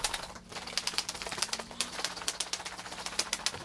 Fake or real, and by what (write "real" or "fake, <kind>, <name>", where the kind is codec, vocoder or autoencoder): real